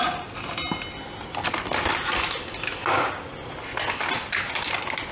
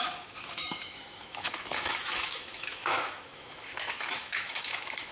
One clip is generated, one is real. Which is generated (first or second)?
second